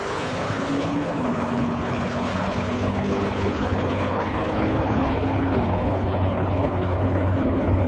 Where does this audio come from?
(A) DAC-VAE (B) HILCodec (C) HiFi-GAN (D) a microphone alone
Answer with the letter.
B